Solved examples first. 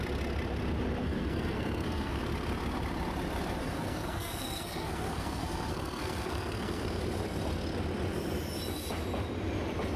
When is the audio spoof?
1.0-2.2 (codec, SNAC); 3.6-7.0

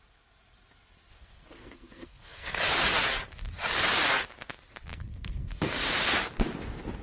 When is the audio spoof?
1.1-2.6 (codec, SNAC); 4.9-5.7

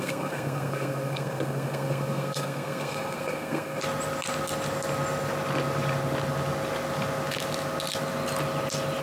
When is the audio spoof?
0.0-3.8 (codec, SNAC)

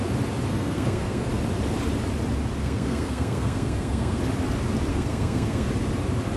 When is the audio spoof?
0.5-1.3 (codec, SNAC); 2.6-4.2; 4.9-5.7

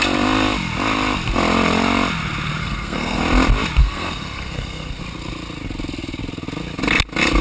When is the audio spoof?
2.6-3.2 (codec, SNAC); 3.8-5.0

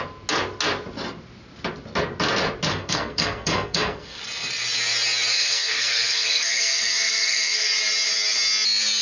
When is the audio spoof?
2.7-4.2 (codec, SNAC); 5.3-7.7

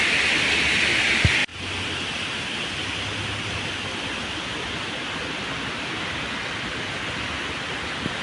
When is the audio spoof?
none

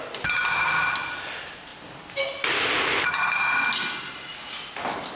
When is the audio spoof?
none